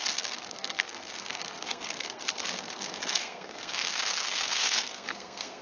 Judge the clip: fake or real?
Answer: fake